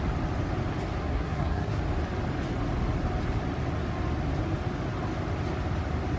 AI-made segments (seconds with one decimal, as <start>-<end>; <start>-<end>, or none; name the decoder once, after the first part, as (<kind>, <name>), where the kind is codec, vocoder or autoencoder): 1.0-1.8 (codec, SNAC)